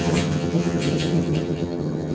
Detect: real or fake fake